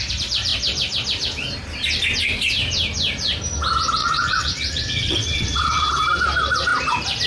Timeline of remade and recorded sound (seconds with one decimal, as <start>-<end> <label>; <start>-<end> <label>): 0.0-4.0 recorded; 4.0-5.9 remade; 5.9-7.3 recorded